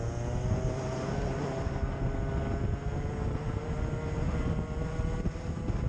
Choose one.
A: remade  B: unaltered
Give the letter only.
B